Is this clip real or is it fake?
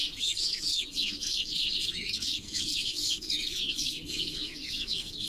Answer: fake